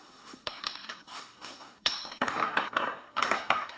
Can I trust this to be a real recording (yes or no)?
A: no